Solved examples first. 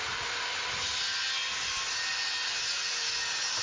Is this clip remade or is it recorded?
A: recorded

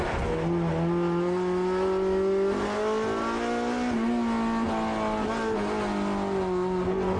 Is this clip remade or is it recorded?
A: recorded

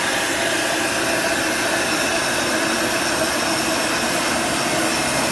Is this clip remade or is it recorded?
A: recorded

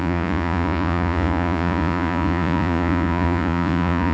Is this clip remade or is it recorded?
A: remade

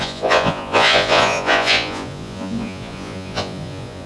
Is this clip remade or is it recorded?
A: remade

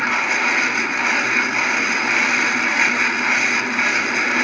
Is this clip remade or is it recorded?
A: recorded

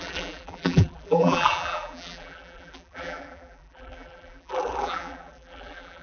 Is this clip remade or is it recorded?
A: remade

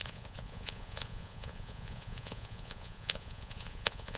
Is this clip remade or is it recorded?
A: remade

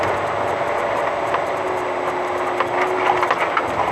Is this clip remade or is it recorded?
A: recorded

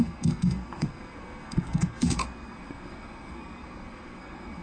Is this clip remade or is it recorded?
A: remade